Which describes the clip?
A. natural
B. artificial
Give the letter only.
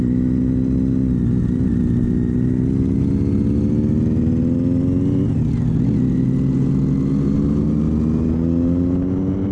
A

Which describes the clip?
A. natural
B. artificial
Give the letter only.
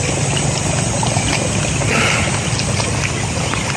A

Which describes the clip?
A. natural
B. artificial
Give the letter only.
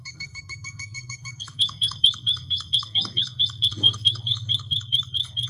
B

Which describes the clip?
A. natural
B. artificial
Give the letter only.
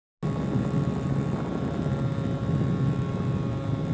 A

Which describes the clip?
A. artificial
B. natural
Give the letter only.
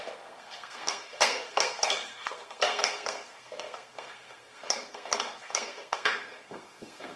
A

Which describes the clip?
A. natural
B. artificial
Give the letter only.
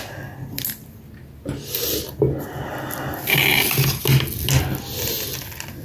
A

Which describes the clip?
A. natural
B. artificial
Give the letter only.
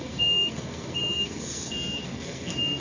B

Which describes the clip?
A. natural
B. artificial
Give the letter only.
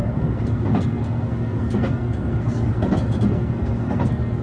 B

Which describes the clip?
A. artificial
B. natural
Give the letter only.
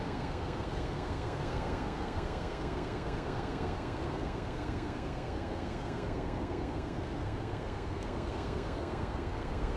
A